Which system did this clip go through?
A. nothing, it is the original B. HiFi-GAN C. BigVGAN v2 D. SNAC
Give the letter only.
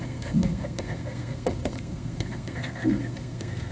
D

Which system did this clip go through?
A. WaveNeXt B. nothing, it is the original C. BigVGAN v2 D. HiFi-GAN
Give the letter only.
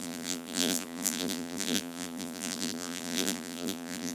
C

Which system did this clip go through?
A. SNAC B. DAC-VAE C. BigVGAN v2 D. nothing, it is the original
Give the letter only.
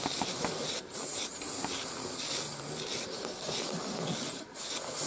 D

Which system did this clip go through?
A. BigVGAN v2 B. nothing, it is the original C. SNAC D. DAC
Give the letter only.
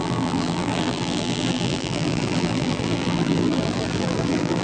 A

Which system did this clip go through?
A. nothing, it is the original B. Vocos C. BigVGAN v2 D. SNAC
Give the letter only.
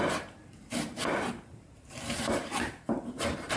C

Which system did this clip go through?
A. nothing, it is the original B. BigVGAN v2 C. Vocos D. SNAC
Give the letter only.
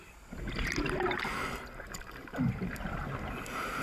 A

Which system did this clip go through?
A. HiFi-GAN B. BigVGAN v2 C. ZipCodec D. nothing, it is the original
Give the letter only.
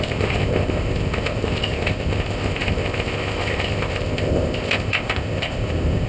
C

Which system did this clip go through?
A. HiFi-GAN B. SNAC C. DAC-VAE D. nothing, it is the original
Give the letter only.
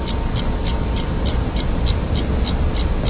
D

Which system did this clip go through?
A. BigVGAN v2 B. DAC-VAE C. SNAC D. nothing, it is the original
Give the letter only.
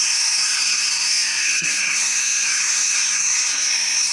C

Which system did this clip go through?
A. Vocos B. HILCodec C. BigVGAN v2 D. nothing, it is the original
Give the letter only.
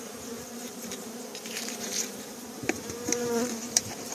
C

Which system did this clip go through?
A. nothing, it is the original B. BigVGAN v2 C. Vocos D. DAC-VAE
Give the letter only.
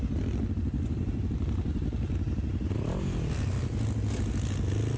A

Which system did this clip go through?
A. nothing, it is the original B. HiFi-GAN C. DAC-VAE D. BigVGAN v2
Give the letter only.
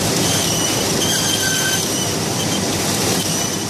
A